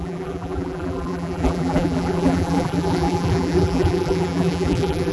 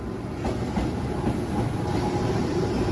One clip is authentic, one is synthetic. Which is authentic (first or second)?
second